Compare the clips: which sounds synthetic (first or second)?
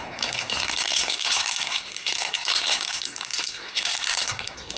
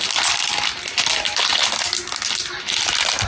first